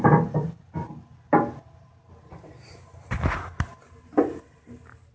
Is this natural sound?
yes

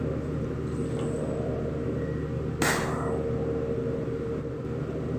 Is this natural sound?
yes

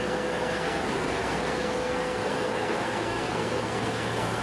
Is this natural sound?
no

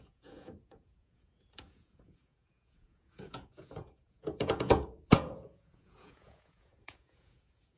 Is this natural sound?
no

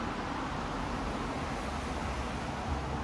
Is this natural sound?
yes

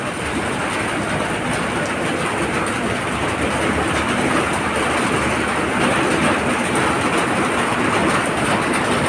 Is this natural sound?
yes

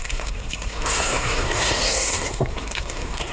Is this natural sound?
no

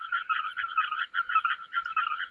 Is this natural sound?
no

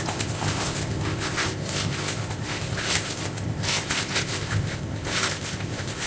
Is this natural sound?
no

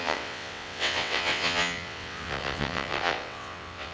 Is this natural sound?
no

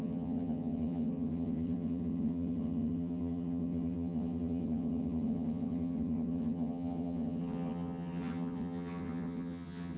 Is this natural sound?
no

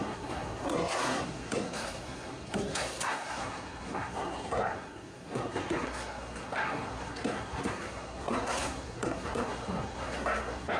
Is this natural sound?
no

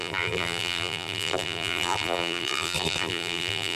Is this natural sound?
no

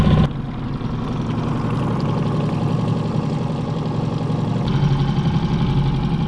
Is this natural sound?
yes